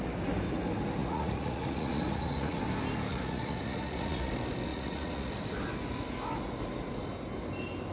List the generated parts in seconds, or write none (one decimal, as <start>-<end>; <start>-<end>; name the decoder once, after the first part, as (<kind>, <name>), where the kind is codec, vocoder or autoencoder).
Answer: 1.0-2.6 (vocoder, Vocos); 3.1-4.3; 4.7-5.3